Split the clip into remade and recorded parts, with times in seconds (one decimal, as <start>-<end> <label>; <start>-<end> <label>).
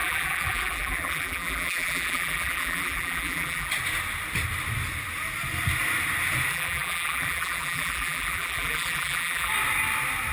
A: 0.0-3.7 remade; 3.7-6.5 recorded; 6.5-9.5 remade; 9.5-10.3 recorded